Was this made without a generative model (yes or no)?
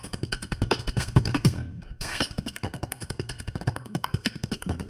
no